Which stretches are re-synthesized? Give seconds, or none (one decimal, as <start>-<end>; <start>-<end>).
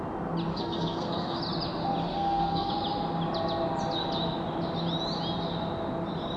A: 0.5-1.4; 2.1-2.7